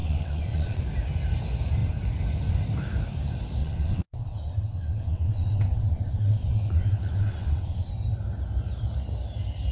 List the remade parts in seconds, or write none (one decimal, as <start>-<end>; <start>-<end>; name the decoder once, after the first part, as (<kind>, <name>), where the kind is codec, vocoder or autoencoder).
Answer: 0.0-0.8 (vocoder, WaveNeXt); 3.6-7.9